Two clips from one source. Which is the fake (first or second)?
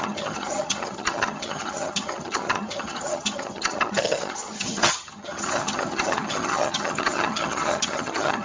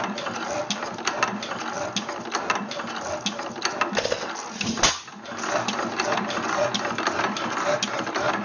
first